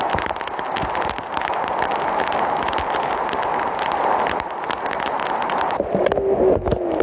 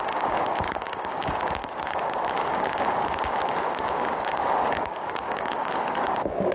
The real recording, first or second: first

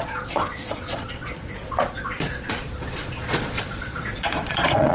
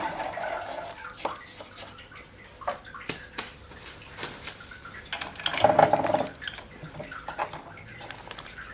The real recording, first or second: second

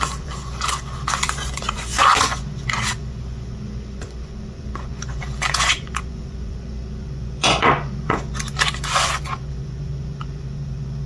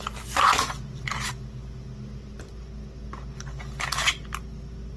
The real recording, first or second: second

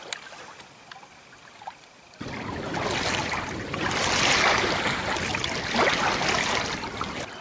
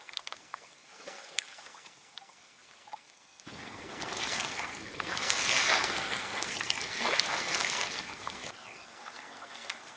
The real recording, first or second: first